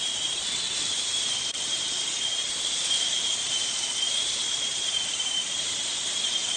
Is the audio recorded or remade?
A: remade